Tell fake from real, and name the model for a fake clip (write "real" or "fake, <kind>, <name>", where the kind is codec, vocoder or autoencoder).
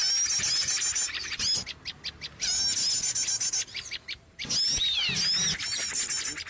real